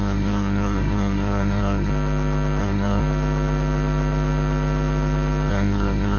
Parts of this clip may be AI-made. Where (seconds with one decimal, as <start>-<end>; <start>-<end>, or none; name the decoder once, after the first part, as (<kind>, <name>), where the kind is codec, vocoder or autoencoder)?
0.0-1.9 (codec, SNAC); 2.6-3.0; 5.5-6.2

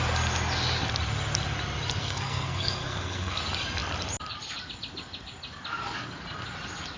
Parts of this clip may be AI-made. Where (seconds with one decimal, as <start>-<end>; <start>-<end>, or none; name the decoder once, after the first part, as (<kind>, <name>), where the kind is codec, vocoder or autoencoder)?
2.0-3.4 (codec, SNAC)